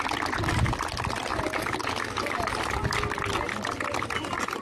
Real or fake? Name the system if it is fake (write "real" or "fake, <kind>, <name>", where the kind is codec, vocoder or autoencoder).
real